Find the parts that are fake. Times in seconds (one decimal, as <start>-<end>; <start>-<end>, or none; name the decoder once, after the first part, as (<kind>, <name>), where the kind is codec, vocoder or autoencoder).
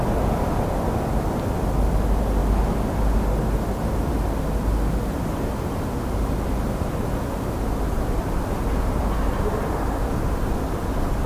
none